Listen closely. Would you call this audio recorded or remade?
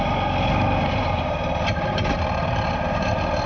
recorded